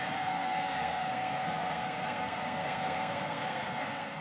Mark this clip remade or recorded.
remade